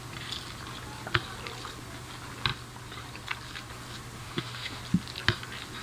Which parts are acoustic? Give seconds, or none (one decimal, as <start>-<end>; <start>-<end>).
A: 0.0-4.2; 4.8-5.8